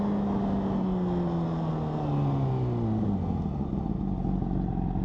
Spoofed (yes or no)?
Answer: no